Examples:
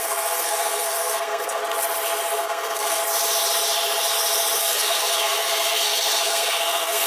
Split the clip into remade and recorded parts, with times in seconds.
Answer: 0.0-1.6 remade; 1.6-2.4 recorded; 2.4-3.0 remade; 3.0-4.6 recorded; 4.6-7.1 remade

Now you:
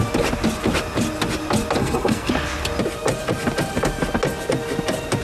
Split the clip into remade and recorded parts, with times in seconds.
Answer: 0.0-1.8 recorded; 1.8-2.3 remade; 2.3-5.2 recorded